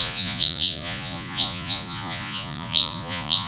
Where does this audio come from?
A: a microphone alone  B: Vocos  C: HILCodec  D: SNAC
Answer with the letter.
B